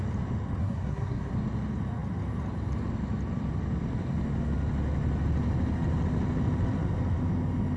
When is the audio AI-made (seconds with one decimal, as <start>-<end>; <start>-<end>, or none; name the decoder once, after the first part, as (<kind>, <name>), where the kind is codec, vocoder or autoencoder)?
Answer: 0.6-1.3 (codec, SNAC)